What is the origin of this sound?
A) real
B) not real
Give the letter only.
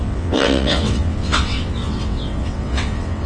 B